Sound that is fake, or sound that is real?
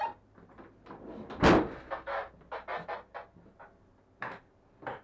real